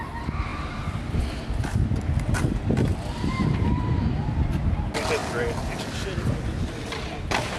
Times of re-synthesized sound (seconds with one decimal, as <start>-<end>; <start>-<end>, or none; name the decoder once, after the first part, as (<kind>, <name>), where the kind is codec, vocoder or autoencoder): 0.5-1.2 (vocoder, BigVGAN v2); 2.9-4.6